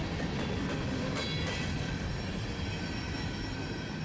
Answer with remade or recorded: recorded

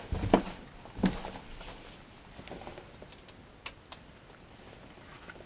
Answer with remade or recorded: recorded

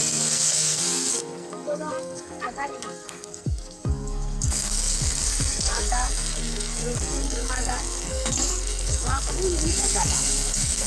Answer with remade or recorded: remade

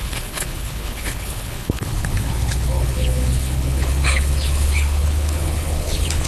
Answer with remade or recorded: remade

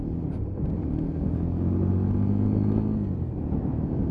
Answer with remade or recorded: recorded